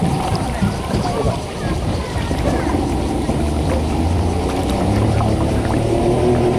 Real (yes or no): no